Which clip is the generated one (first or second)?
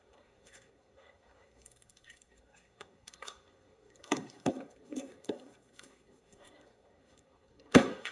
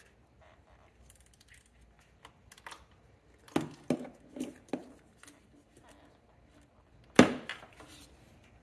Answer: first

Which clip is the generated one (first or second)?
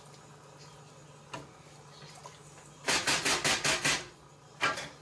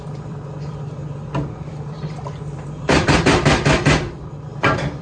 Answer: second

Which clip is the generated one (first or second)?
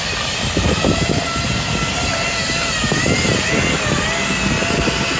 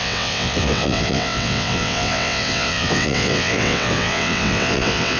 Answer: second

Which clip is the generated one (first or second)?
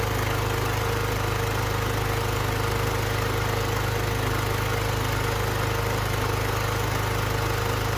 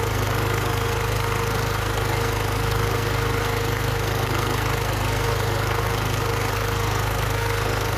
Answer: second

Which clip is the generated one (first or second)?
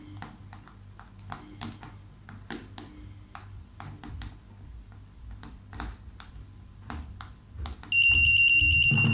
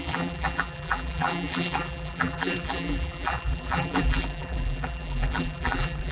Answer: second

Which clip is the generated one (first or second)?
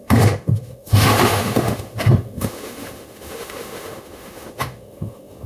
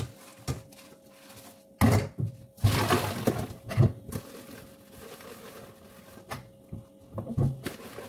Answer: first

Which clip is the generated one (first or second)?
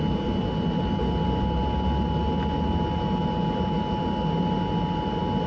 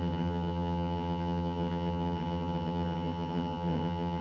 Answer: second